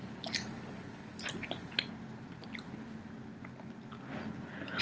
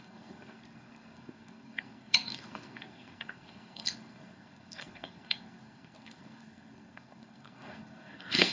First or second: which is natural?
first